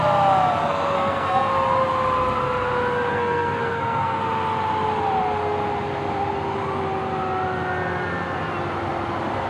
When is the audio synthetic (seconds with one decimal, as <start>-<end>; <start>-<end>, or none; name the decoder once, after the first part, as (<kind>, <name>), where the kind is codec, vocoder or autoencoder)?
0.6-1.5 (codec, SNAC); 3.1-4.2